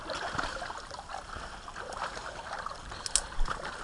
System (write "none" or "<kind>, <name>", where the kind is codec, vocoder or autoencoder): none